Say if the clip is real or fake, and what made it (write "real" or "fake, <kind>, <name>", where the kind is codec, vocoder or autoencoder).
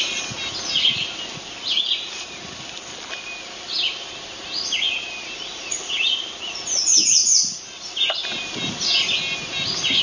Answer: real